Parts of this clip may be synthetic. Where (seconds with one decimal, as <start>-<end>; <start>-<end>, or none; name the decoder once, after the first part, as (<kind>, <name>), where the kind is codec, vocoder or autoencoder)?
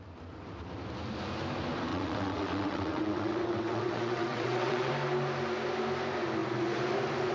1.9-4.9 (vocoder, WaveNeXt)